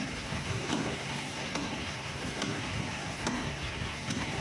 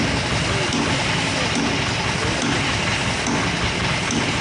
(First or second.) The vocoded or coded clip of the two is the first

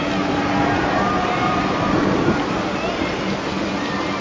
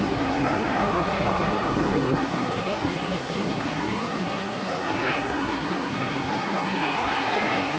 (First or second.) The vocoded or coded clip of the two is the second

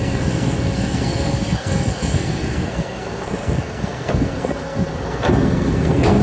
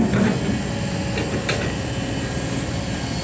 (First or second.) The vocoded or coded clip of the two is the first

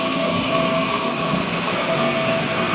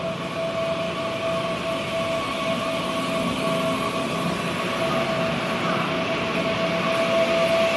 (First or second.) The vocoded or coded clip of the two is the first